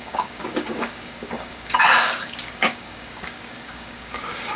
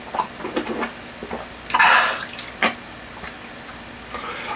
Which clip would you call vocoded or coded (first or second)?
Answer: first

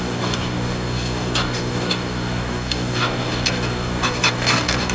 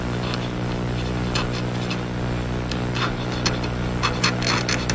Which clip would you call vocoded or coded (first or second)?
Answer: first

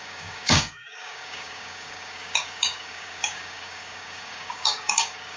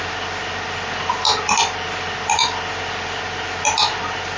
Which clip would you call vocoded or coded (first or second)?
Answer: first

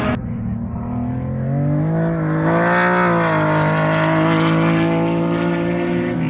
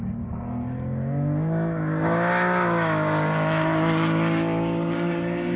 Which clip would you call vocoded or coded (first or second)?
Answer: second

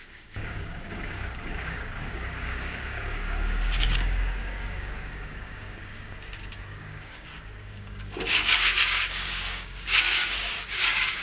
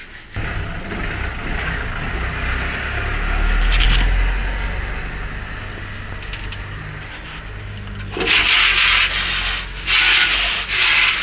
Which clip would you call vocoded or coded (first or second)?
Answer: first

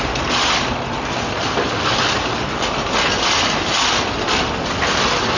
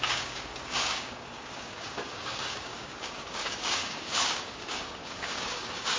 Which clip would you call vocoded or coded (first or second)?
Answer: second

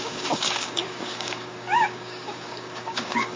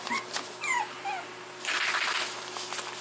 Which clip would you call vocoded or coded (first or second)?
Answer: first